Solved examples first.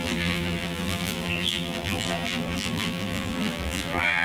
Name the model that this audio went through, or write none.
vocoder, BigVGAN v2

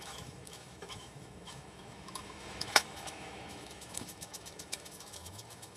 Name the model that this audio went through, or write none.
autoencoder, DAC-VAE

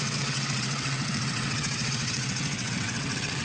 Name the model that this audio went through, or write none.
vocoder, WaveNeXt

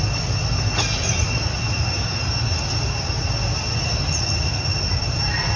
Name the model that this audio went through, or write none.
none